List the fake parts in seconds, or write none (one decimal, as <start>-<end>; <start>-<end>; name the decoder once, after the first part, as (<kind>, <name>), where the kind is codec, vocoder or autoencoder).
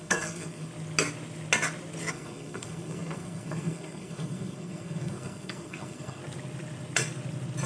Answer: 0.0-0.7 (codec, SNAC); 2.1-6.2